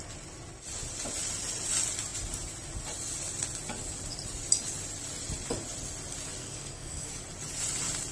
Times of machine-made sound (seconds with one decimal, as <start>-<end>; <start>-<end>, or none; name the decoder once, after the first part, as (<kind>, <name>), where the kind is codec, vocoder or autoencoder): 6.4-7.1 (codec, SNAC)